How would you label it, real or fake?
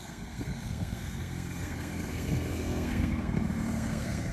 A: fake